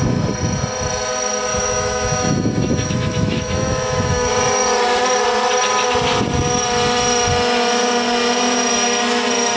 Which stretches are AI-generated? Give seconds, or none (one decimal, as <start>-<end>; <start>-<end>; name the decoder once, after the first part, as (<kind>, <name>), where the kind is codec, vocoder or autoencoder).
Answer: 1.5-4.3 (autoencoder, DAC-VAE)